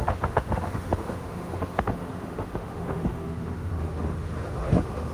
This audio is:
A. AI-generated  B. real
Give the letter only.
A